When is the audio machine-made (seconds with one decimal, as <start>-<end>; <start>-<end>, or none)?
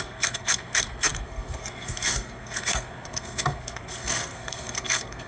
0.0-5.3